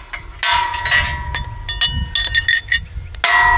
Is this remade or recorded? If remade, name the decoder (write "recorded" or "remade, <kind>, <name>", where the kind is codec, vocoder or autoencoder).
recorded